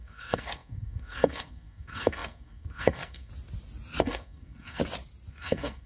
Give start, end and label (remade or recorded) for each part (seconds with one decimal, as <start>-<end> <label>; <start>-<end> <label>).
0.0-3.3 remade; 3.3-4.0 recorded; 4.0-4.8 remade; 4.8-5.3 recorded; 5.3-5.9 remade